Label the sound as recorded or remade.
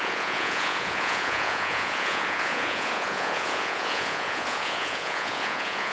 remade